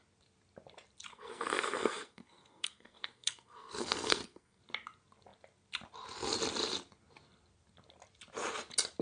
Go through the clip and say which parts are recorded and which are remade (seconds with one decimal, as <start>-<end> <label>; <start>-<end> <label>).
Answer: 0.0-1.1 recorded; 1.1-4.6 remade; 4.6-9.0 recorded